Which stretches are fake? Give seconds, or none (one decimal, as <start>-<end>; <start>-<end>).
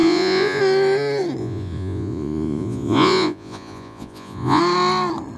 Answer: 0.0-0.6; 1.4-4.6